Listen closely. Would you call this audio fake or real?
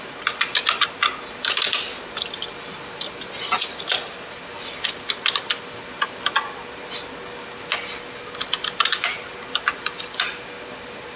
real